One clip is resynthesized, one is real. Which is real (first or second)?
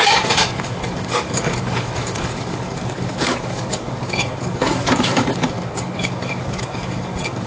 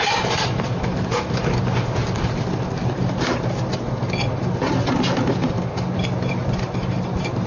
second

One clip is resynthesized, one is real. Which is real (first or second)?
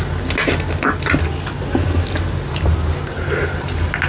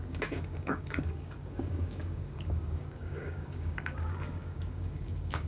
first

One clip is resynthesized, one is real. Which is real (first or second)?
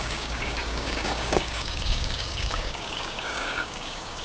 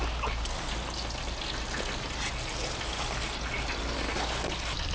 second